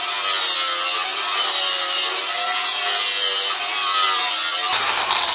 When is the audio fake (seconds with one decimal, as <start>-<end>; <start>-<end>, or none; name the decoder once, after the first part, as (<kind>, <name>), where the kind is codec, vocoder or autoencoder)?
1.1-2.2 (vocoder, BigVGAN v2)